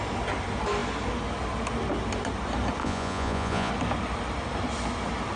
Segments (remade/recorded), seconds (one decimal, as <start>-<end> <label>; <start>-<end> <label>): 0.0-2.8 recorded; 2.8-3.7 remade; 3.7-5.4 recorded